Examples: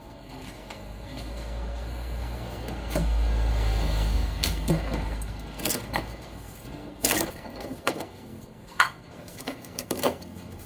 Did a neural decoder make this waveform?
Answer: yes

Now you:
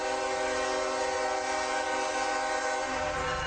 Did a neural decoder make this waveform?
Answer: no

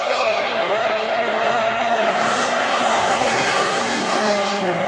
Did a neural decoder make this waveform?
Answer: yes